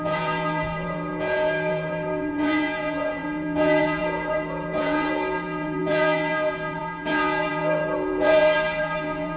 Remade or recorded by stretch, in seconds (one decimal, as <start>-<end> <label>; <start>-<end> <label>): 0.0-9.4 remade